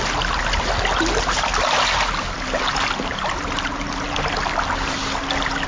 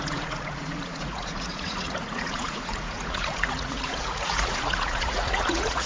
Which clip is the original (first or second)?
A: first